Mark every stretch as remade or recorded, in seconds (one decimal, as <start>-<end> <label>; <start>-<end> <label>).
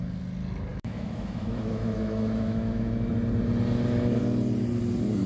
0.0-0.7 recorded; 0.7-3.1 remade; 3.1-5.3 recorded